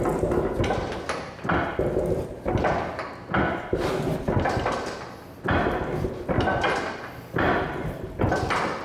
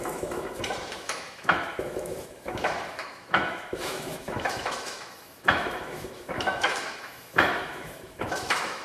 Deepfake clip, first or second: second